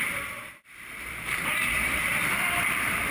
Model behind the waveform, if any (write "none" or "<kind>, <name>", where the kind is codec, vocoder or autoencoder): vocoder, BigVGAN v2